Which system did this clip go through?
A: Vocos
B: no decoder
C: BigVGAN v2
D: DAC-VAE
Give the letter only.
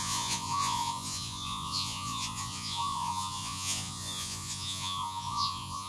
A